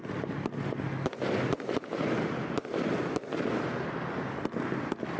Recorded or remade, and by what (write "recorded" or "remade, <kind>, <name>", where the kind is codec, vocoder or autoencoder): recorded